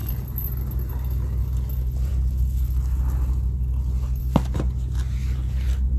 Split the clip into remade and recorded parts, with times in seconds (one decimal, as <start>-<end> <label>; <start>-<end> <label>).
0.0-6.0 recorded

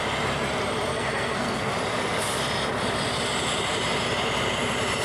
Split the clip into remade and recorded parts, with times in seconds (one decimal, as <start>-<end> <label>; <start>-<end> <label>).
0.0-0.9 recorded; 0.9-1.7 remade; 1.7-5.0 recorded

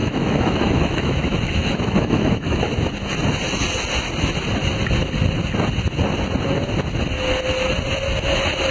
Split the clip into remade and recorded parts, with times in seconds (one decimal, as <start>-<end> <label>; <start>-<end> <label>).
0.0-2.7 remade; 2.7-8.7 recorded

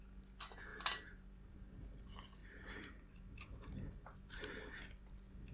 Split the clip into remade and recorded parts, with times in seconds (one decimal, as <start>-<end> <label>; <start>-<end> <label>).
0.0-0.7 recorded; 0.7-1.7 remade; 1.7-2.4 recorded; 2.4-4.8 remade; 4.8-5.5 recorded